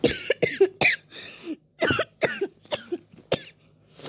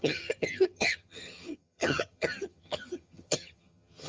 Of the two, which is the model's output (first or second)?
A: second